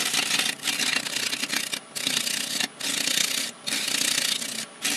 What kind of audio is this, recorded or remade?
recorded